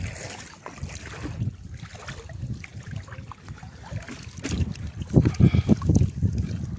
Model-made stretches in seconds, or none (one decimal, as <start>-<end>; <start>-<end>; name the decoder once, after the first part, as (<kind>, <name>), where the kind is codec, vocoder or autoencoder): none